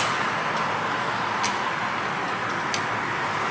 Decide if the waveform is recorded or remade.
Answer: recorded